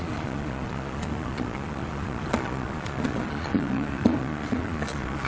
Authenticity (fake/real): fake